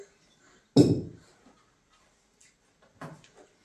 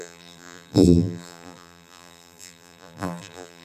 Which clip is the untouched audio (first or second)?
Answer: first